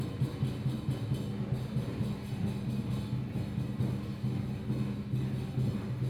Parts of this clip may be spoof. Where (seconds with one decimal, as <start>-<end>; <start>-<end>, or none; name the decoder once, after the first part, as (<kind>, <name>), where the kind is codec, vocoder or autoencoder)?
none